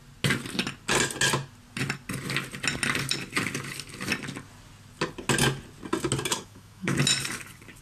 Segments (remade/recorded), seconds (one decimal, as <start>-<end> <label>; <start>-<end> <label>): 0.0-6.3 recorded; 6.3-7.0 remade; 7.0-7.8 recorded